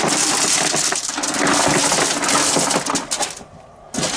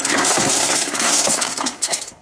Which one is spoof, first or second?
second